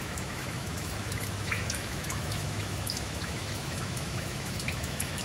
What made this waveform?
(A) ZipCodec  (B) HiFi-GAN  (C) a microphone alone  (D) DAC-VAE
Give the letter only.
D